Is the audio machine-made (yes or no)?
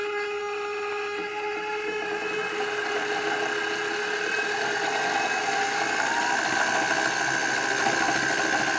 no